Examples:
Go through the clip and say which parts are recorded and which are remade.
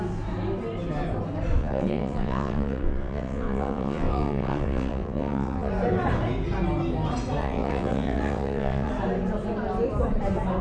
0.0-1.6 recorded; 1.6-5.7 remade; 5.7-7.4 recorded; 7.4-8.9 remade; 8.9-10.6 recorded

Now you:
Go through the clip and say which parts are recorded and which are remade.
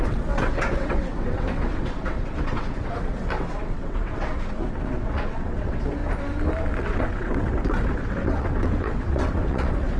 0.0-6.0 remade; 6.0-6.8 recorded; 6.8-10.0 remade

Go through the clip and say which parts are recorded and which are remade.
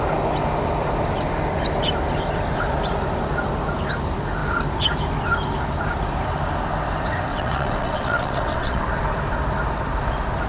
0.0-7.3 recorded; 7.3-8.8 remade; 8.8-10.5 recorded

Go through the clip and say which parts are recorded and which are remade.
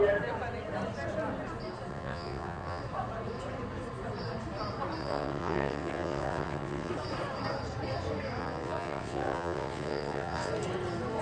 0.0-1.9 recorded; 1.9-2.8 remade; 2.8-5.0 recorded; 5.0-6.9 remade; 6.9-8.4 recorded; 8.4-10.5 remade; 10.5-11.2 recorded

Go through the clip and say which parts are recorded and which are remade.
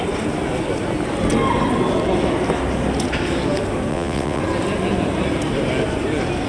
0.0-3.9 recorded; 3.9-4.4 remade; 4.4-6.5 recorded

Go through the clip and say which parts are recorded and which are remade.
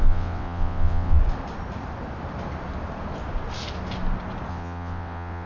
0.0-1.2 remade; 1.2-4.5 recorded; 4.5-5.5 remade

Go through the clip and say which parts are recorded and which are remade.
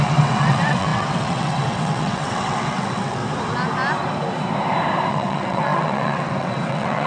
0.0-3.2 remade; 3.2-5.1 recorded; 5.1-7.1 remade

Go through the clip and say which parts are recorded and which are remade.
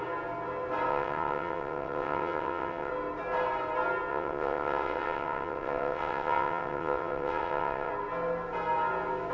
0.0-0.9 recorded; 0.9-2.9 remade; 2.9-4.1 recorded; 4.1-7.9 remade; 7.9-9.3 recorded